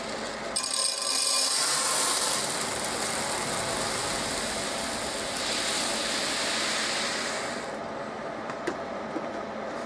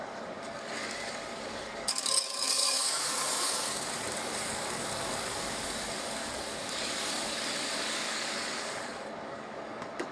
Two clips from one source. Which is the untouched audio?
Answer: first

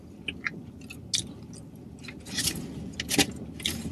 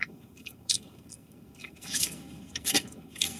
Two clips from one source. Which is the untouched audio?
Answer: first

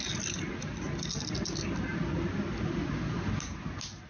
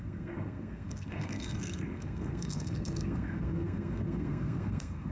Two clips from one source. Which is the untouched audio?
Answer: first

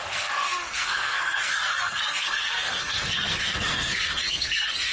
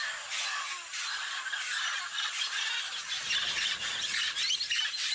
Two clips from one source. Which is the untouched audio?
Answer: second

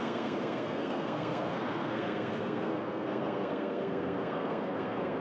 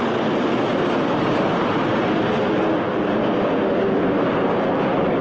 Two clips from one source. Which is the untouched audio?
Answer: second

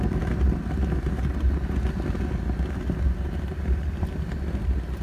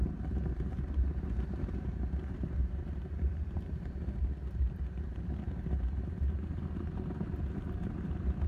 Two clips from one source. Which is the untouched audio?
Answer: first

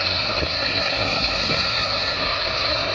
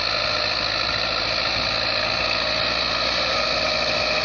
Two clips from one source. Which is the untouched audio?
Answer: second